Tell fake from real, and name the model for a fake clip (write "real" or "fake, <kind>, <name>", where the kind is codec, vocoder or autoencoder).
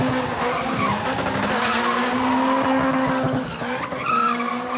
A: real